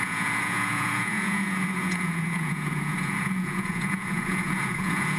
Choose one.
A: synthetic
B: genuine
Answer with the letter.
A